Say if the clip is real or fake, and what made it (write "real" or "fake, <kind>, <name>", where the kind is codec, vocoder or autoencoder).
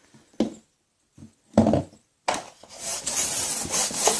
real